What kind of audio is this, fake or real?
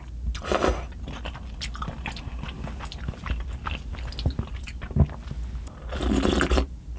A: real